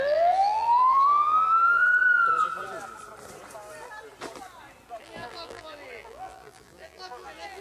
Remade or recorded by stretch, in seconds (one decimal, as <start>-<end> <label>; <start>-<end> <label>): 0.0-1.9 remade; 1.9-5.0 recorded; 5.0-7.6 remade